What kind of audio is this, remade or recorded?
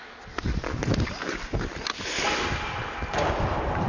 recorded